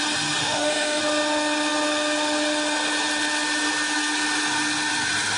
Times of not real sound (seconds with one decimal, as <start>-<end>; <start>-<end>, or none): 0.4-1.0